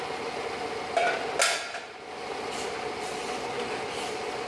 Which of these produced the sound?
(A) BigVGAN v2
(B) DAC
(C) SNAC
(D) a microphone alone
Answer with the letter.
D